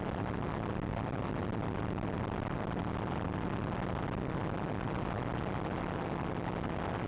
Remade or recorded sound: recorded